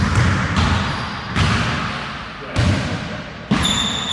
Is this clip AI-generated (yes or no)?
no